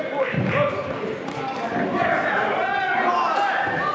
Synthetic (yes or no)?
no